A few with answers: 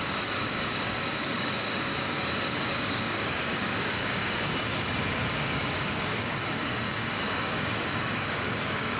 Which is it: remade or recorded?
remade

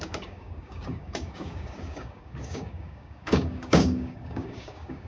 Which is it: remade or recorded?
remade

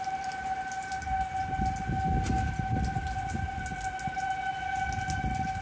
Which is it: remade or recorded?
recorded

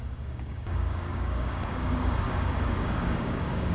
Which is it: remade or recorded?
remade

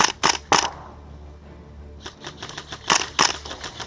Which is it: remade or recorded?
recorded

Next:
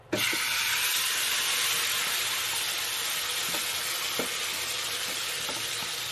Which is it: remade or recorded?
recorded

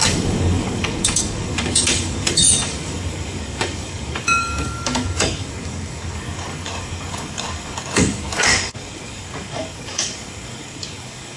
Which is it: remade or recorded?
remade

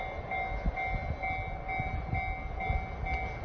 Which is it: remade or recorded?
recorded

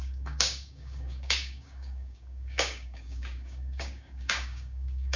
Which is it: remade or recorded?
remade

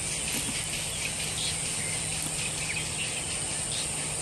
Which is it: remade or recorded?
recorded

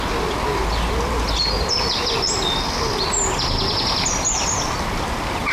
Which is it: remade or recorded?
recorded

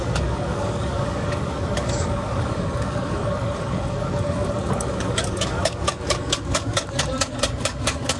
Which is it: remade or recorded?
remade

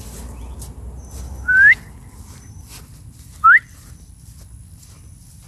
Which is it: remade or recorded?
recorded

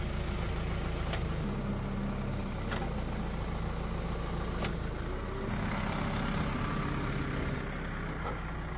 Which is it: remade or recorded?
recorded